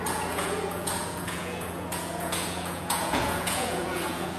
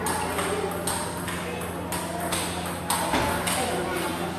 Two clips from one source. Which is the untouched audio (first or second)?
second